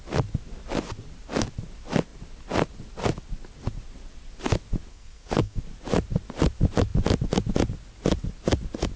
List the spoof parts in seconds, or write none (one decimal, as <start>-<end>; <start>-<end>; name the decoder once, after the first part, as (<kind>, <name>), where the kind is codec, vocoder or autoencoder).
4.9-5.6 (codec, SNAC)

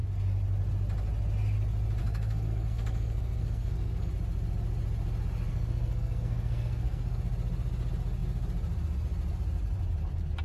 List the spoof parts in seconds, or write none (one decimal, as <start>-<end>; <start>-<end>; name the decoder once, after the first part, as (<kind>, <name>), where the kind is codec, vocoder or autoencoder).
2.0-4.1 (codec, SNAC); 5.5-7.2

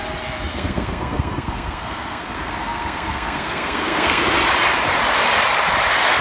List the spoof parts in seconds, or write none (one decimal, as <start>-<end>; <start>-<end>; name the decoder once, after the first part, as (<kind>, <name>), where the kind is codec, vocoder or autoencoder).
0.5-4.2 (codec, SNAC)

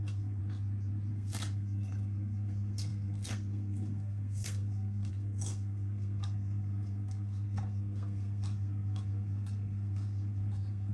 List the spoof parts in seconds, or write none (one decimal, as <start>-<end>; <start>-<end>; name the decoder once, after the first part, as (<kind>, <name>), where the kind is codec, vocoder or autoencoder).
0.0-0.4 (codec, SNAC); 1.1-10.9

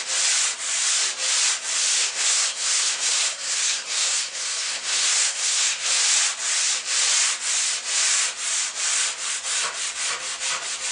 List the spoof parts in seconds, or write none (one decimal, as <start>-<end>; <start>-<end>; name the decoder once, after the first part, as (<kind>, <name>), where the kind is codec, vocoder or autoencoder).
2.0-5.9 (codec, SNAC)

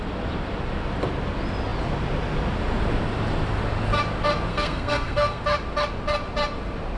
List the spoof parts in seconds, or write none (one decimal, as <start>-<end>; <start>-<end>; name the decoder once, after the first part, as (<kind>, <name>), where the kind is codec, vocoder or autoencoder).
4.5-5.4 (codec, SNAC)

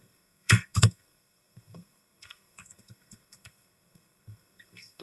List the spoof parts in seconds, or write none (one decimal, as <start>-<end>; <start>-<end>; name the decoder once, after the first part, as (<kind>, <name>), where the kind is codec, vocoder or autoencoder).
0.0-5.0 (codec, SNAC)

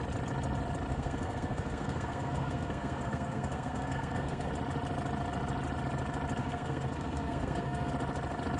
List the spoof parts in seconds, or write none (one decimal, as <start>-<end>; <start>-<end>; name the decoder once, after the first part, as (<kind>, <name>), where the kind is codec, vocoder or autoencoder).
0.9-4.5 (codec, SNAC); 6.4-7.9